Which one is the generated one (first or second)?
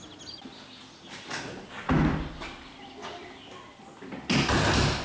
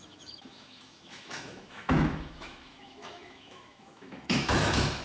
second